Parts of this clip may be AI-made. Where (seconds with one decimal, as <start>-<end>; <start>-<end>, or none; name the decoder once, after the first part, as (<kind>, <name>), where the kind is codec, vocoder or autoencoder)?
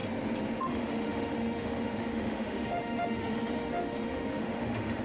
0.6-5.0 (autoencoder, DAC-VAE)